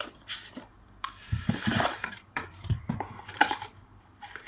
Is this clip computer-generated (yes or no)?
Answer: yes